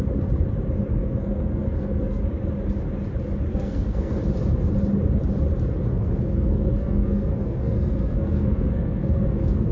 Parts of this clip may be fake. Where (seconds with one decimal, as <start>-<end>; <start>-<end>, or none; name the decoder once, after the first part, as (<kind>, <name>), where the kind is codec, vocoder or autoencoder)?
1.0-2.2 (codec, SNAC); 3.5-4.2; 5.9-9.7